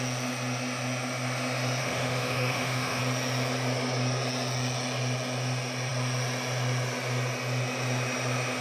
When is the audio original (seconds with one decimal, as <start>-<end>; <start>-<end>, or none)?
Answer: 0.0-1.8; 3.0-8.6